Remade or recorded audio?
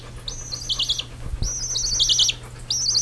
recorded